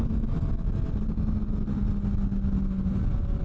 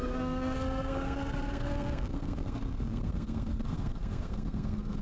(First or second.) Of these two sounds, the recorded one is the first